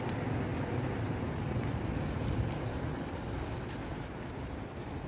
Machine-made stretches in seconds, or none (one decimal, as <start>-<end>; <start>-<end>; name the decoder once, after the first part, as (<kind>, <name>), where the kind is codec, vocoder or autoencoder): none